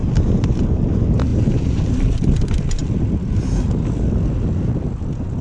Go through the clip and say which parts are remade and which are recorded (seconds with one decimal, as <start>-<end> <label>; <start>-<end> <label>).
0.0-1.3 recorded; 1.3-2.0 remade; 2.0-5.4 recorded